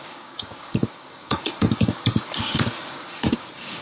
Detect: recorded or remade remade